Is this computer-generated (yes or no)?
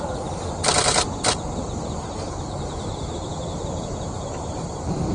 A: yes